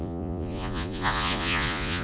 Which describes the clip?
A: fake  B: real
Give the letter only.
A